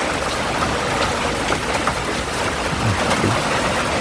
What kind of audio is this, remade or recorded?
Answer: recorded